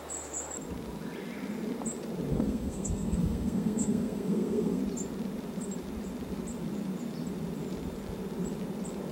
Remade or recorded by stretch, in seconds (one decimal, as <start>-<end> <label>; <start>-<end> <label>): 0.0-2.3 recorded; 2.3-4.8 remade; 4.8-9.1 recorded